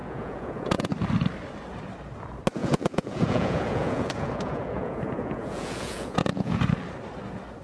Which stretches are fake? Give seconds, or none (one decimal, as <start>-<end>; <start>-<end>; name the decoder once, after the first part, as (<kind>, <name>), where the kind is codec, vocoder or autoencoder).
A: 0.0-0.9 (vocoder, Vocos); 2.6-6.6